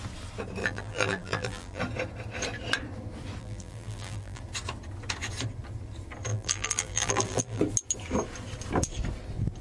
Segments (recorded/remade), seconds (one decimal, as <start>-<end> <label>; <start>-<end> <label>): 0.0-0.6 recorded; 0.6-1.8 remade; 1.8-3.4 recorded; 3.4-4.4 remade; 4.4-6.3 recorded; 6.3-7.6 remade; 7.6-9.6 recorded